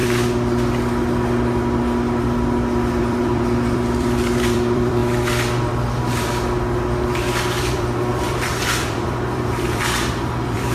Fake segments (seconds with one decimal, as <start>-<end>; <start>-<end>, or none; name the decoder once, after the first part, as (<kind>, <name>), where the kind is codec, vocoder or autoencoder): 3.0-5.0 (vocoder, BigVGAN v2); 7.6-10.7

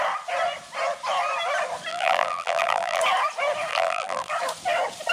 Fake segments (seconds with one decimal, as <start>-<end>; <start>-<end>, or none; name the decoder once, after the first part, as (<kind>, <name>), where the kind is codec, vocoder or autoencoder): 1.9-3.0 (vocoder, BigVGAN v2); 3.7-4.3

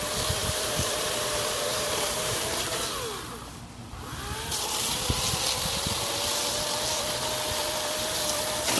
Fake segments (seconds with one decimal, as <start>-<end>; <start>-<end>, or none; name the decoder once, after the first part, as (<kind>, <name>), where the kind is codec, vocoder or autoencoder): 0.4-2.8 (vocoder, BigVGAN v2)

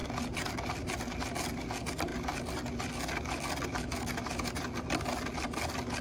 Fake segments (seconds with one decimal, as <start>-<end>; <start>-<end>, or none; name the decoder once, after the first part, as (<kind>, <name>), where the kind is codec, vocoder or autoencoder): none